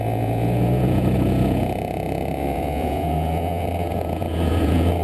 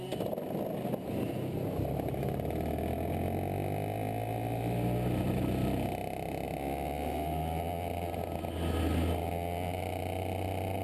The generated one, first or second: first